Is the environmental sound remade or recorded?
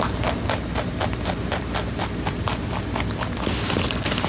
recorded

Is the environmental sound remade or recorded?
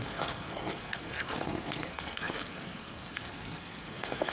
remade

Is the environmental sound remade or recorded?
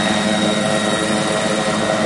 recorded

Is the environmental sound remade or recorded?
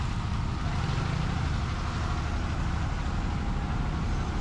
recorded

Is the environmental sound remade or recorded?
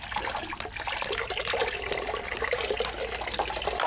recorded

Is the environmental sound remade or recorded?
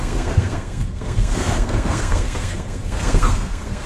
remade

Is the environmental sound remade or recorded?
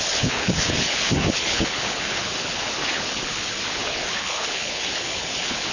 remade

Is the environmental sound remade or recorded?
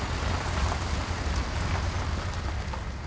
recorded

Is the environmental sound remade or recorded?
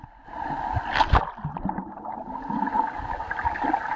recorded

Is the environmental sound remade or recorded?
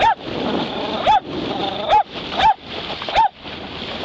recorded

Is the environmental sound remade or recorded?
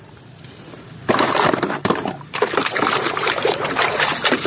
remade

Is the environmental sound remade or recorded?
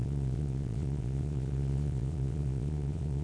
remade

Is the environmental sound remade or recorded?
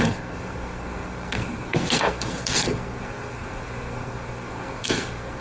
remade